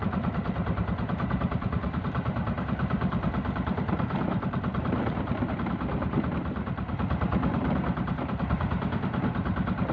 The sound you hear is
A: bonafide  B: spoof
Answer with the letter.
B